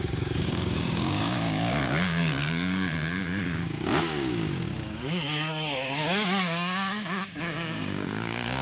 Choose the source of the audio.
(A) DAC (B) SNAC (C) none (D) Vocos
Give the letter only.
A